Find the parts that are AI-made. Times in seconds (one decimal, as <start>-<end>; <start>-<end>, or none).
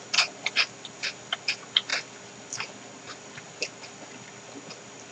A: none